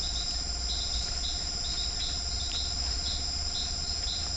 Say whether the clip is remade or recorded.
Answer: recorded